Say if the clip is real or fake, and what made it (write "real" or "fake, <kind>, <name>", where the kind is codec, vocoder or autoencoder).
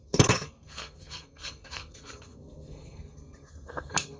fake, codec, SNAC